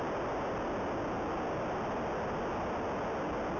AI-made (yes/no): no